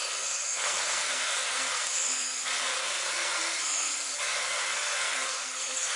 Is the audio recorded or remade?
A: remade